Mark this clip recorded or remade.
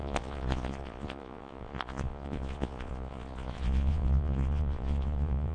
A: remade